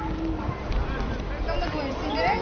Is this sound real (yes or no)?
yes